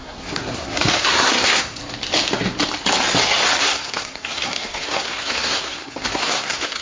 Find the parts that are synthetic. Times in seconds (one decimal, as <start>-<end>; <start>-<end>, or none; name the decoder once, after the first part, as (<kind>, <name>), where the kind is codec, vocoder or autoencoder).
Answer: 0.0-1.8 (codec, SNAC); 3.6-6.8